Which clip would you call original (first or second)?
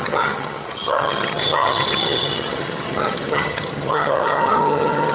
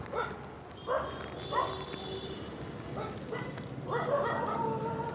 second